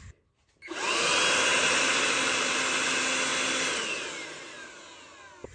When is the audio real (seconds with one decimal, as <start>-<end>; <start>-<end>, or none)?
0.0-1.5; 2.5-5.5